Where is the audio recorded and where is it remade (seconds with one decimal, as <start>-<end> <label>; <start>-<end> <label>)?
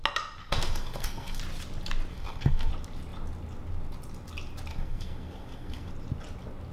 0.0-0.4 recorded; 0.4-1.4 remade; 1.4-2.1 recorded; 2.1-2.7 remade; 2.7-4.7 recorded; 4.7-5.9 remade; 5.9-6.7 recorded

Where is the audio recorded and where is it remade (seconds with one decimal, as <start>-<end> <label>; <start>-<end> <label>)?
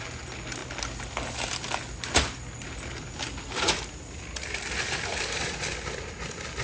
0.0-5.1 recorded; 5.1-5.7 remade; 5.7-6.6 recorded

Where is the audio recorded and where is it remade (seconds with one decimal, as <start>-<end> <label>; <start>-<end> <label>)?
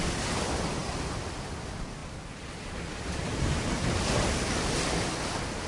0.0-5.7 recorded